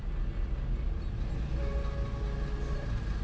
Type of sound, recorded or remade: recorded